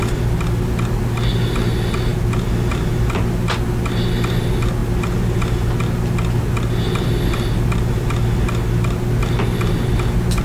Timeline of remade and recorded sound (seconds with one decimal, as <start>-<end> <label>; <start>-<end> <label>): 0.0-10.4 recorded